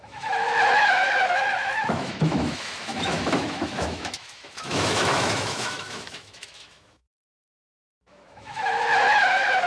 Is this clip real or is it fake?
fake